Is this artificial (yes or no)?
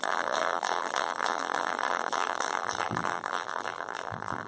yes